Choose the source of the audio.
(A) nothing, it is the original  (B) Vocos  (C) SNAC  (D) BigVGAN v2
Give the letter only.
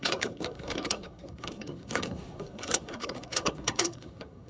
C